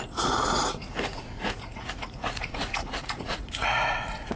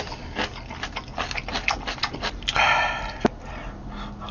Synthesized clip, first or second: first